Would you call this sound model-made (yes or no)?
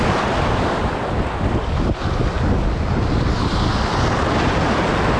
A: no